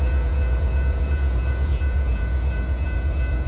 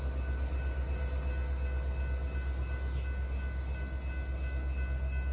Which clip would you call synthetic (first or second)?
first